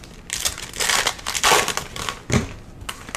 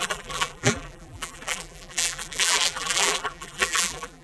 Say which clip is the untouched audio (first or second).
first